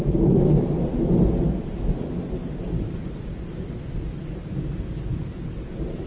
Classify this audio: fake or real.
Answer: real